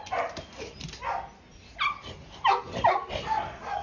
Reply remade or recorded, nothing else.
recorded